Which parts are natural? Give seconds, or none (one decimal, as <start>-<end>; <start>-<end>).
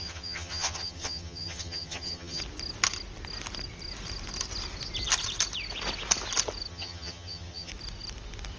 2.4-6.7; 7.7-8.6